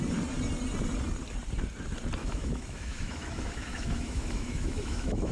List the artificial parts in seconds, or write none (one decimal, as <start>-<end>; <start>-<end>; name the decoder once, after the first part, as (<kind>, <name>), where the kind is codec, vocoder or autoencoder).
2.2-5.3 (autoencoder, DAC-VAE)